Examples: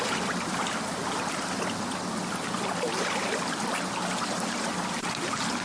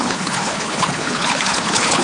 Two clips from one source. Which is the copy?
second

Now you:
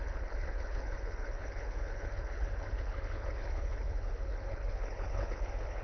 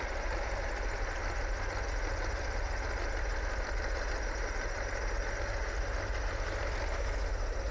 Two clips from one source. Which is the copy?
first